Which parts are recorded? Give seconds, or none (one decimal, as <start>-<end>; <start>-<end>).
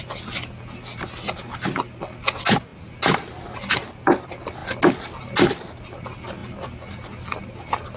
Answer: 0.0-8.0